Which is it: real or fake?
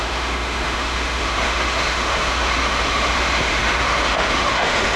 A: fake